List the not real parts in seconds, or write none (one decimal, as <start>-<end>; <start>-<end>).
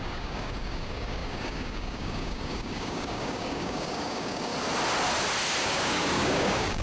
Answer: 0.0-4.5; 5.6-6.8